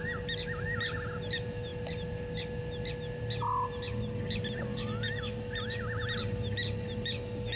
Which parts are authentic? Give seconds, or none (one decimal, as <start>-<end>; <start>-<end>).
0.0-4.7; 5.3-7.6